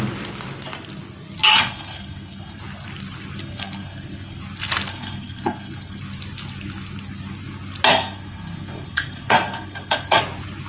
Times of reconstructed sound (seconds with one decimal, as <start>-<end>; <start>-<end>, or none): 1.5-2.6; 3.4-4.4; 4.9-6.0; 7.9-10.2